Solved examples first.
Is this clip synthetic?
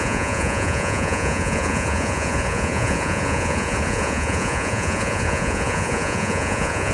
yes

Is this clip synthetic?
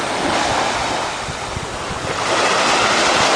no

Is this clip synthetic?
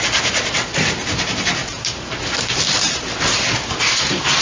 yes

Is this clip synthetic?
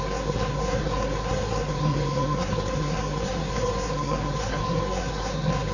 yes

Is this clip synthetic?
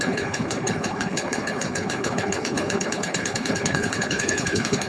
yes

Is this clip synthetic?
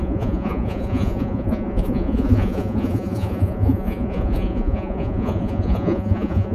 yes